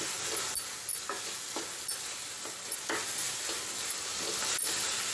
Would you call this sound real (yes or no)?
yes